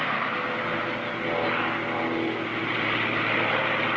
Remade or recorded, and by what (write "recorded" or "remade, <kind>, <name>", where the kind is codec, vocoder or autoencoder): recorded